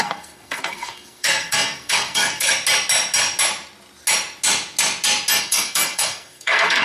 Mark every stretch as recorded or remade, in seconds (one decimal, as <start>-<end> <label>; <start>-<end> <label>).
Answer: 0.0-2.5 remade; 2.5-5.4 recorded; 5.4-6.8 remade